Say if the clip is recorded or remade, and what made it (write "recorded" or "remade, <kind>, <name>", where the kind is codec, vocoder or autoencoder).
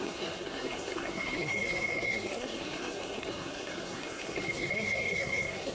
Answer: remade, codec, SNAC